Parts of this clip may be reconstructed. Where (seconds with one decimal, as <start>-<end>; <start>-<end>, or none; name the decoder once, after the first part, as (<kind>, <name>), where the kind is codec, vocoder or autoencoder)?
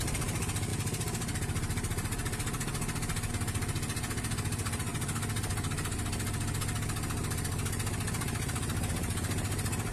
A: none